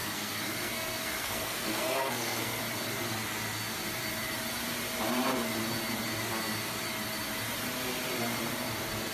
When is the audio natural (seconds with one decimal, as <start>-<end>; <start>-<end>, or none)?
2.6-9.1